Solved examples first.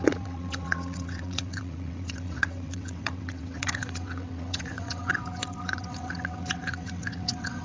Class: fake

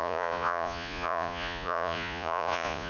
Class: fake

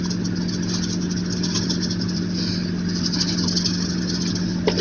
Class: real